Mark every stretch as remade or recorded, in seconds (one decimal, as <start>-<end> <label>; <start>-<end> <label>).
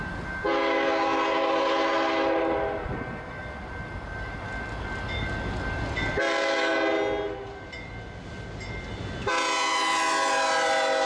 0.0-11.1 recorded